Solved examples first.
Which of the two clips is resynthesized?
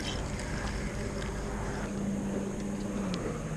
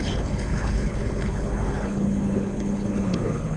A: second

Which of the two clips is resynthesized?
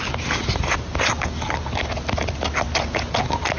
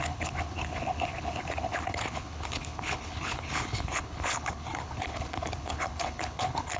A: second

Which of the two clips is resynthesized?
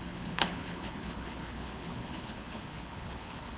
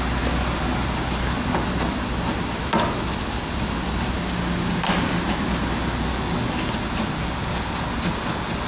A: first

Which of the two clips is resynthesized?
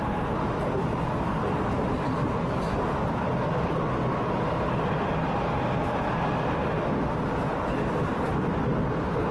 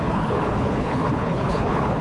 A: second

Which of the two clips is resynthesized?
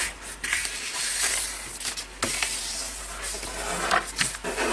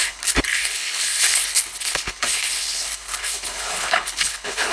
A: second